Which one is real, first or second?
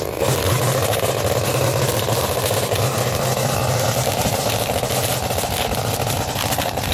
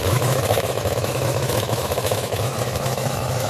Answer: first